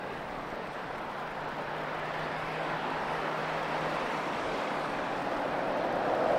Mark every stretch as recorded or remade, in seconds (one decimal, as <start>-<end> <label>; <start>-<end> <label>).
0.0-1.3 remade; 1.3-2.2 recorded; 2.2-3.4 remade; 3.4-4.1 recorded; 4.1-5.2 remade; 5.2-6.4 recorded

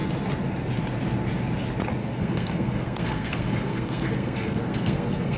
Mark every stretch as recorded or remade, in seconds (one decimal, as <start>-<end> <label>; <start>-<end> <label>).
0.0-2.0 recorded; 2.0-5.4 remade

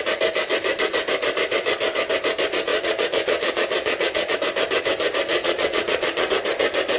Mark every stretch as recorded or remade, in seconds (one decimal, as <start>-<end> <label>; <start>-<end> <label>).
0.0-2.7 recorded; 2.7-4.3 remade; 4.3-5.3 recorded; 5.3-6.3 remade; 6.3-7.0 recorded

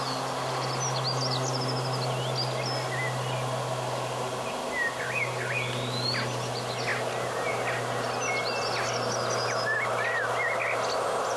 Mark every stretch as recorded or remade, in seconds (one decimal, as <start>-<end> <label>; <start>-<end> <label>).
0.0-11.4 recorded

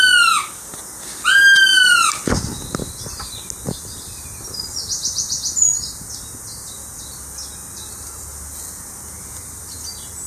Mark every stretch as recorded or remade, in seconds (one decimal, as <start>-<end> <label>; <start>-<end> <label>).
0.0-1.7 recorded; 1.7-2.6 remade; 2.6-10.3 recorded

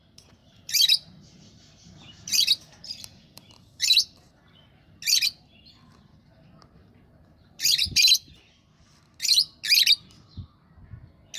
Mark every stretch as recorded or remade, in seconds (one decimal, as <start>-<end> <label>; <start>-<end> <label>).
0.0-0.4 recorded; 0.4-5.0 remade; 5.0-6.8 recorded; 6.8-8.5 remade; 8.5-11.4 recorded